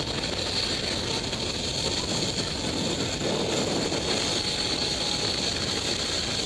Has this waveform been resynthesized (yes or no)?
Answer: no